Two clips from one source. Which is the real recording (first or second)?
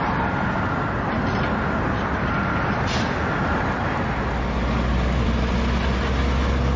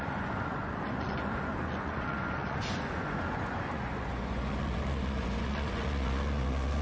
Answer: first